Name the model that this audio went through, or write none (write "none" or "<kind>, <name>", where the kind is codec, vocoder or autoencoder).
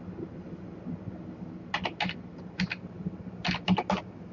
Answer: none